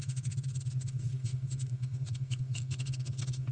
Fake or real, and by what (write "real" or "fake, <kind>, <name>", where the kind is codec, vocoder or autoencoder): fake, codec, SNAC